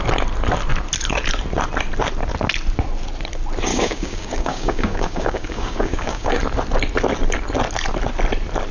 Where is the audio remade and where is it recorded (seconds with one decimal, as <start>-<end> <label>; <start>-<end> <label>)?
0.0-3.7 recorded; 3.7-6.4 remade; 6.4-8.7 recorded